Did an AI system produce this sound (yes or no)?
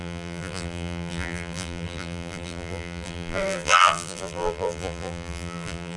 yes